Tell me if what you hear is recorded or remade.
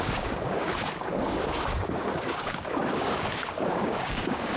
remade